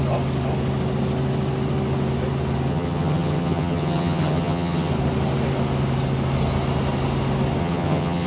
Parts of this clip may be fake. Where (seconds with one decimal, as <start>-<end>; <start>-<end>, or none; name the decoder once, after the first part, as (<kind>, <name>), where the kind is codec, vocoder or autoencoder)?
2.7-4.9 (vocoder, HiFi-GAN); 7.6-8.3